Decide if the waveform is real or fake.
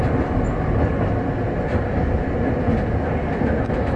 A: real